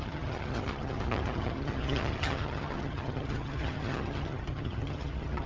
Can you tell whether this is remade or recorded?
remade